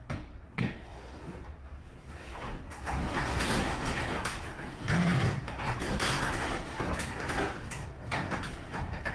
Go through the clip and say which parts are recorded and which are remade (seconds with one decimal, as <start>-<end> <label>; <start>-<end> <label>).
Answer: 0.0-9.1 remade